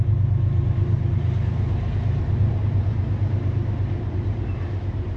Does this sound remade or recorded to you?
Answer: remade